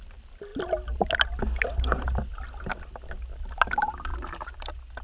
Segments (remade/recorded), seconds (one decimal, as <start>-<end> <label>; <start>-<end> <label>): 0.0-4.1 recorded; 4.1-5.0 remade